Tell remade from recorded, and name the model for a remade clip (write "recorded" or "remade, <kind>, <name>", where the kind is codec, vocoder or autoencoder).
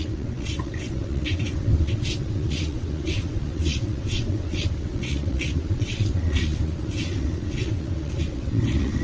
remade, vocoder, WaveNeXt